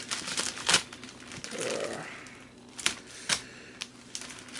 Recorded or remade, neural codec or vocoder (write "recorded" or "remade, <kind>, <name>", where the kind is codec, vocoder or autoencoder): recorded